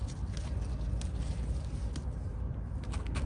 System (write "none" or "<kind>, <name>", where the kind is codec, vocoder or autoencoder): none